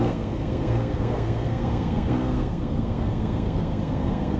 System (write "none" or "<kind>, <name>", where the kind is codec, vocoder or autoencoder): codec, SNAC